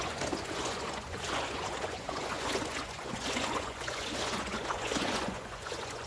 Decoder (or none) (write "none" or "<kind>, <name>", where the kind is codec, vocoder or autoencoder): vocoder, Vocos